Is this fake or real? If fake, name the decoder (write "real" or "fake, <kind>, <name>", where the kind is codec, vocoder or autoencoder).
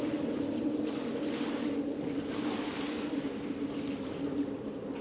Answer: real